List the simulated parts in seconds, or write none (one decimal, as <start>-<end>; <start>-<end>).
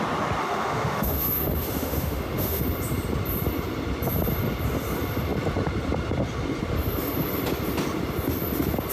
0.4-2.6